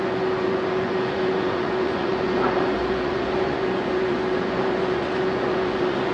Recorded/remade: remade